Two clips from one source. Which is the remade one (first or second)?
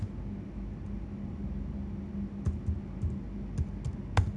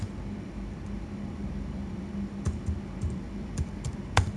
second